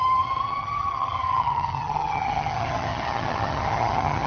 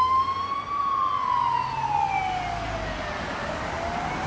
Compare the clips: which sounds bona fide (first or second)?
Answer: second